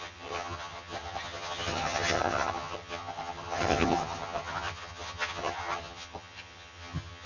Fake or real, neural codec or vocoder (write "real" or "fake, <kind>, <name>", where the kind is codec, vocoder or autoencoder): fake, vocoder, HiFi-GAN